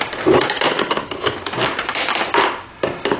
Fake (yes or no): no